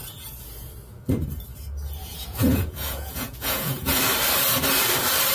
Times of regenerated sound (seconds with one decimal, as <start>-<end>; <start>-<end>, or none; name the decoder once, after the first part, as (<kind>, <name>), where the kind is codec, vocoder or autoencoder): 0.0-0.7 (vocoder, Vocos); 2.0-4.0